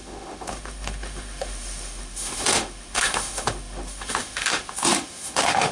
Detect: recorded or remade remade